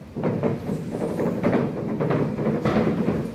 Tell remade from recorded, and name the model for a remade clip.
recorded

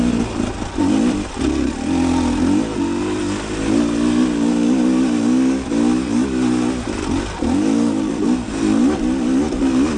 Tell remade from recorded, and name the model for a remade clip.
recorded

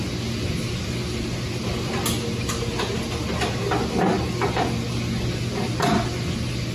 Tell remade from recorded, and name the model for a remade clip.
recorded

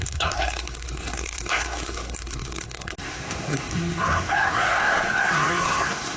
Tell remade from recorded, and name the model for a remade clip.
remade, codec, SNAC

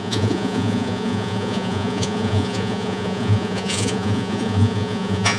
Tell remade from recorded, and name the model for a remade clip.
remade, vocoder, Vocos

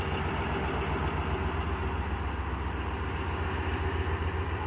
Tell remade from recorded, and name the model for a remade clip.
recorded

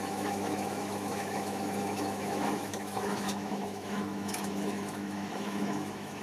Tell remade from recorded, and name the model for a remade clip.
remade, autoencoder, DAC-VAE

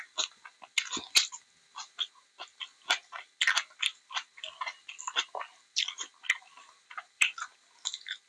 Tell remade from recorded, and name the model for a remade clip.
recorded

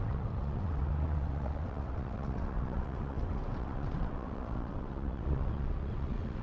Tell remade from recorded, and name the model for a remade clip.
remade, vocoder, WaveNeXt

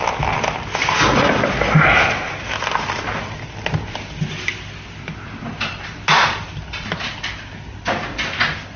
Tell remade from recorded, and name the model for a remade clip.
recorded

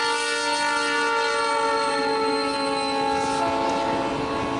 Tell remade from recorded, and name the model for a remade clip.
recorded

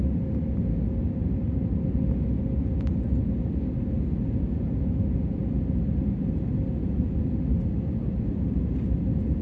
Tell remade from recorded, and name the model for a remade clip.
recorded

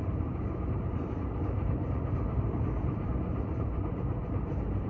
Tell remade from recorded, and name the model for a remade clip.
remade, vocoder, BigVGAN v2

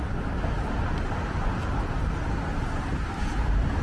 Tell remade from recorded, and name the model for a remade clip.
recorded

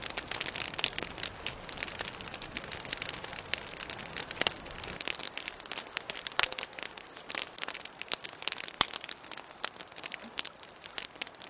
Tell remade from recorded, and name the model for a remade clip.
recorded